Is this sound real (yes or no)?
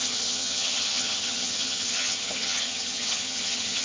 no